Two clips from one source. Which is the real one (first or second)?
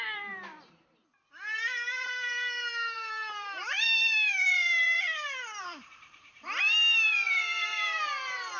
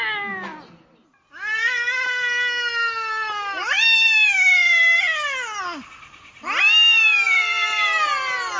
second